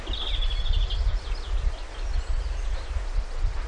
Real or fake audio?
real